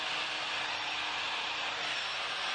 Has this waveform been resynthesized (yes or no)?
no